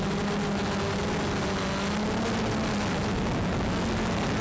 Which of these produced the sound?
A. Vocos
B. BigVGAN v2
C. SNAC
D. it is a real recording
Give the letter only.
D